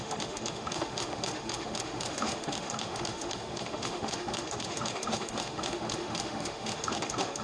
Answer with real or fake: fake